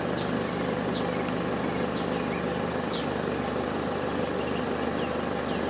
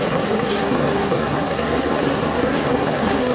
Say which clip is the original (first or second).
first